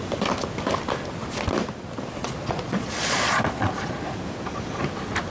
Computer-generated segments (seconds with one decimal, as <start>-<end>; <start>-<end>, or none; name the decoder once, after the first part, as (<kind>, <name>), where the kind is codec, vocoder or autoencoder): 2.2-3.4 (vocoder, Vocos)